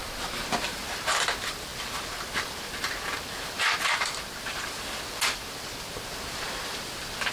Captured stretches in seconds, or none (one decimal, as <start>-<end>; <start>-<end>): 0.0-7.3